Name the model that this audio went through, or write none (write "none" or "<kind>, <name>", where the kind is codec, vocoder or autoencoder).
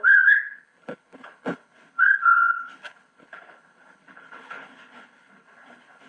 codec, HILCodec